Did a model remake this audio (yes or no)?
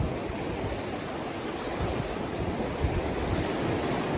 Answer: no